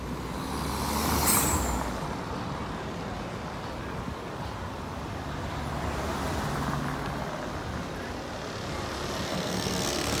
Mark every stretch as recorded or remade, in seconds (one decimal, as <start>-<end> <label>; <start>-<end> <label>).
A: 0.0-9.3 recorded; 9.3-10.2 remade